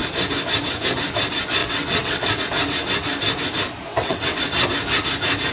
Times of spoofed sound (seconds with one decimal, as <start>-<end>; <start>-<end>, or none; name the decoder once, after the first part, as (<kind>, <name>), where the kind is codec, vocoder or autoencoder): 1.6-2.4 (vocoder, WaveNeXt); 3.9-4.4